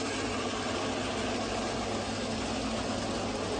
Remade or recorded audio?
recorded